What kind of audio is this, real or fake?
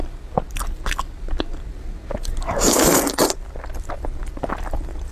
real